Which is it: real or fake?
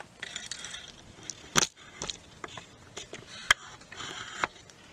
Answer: real